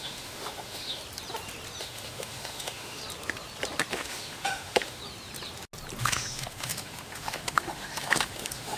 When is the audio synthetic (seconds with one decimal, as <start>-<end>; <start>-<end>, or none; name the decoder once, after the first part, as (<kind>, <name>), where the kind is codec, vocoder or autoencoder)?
0.0-1.0 (autoencoder, DAC-VAE); 1.8-3.0; 3.9-5.0; 6.0-8.8

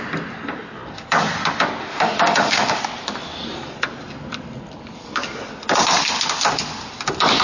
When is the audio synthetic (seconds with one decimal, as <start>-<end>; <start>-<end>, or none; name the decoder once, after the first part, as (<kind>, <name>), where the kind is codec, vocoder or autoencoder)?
1.8-2.8 (autoencoder, DAC-VAE)